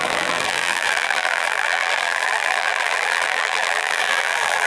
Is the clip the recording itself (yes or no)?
no